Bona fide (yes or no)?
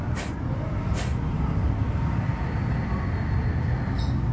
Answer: yes